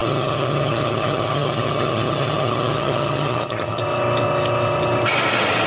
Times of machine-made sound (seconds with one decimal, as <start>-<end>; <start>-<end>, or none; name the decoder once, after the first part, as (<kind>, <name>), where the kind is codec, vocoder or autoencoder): 0.0-3.8 (vocoder, HiFi-GAN)